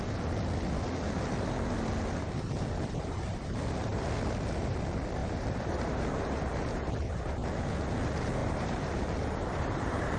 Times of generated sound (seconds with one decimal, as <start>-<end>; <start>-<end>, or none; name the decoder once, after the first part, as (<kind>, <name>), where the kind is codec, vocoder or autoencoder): 5.2-7.2 (vocoder, BigVGAN v2); 8.4-10.2